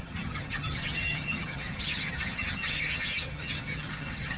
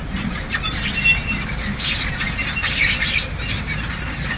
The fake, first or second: first